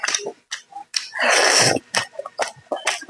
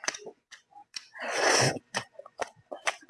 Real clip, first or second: first